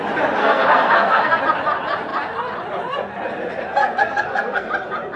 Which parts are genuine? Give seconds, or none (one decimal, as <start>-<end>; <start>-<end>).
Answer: 0.0-0.4; 1.4-3.8; 4.7-5.2